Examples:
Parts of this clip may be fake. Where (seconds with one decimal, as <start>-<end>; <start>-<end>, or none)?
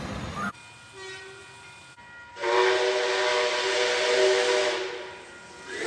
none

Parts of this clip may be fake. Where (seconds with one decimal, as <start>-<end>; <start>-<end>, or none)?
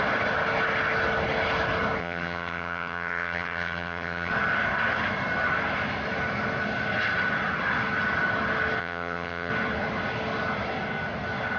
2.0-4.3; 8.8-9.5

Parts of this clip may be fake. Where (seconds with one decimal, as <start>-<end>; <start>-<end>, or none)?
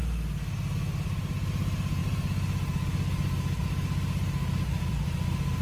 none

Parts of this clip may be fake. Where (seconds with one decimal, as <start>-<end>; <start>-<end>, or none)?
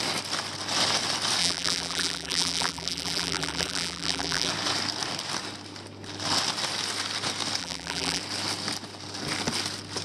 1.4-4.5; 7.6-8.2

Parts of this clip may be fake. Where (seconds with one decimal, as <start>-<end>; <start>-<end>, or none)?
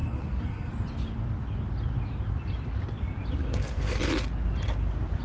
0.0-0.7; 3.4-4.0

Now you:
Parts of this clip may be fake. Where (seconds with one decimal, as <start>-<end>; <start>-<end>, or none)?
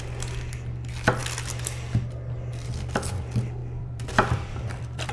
3.6-5.1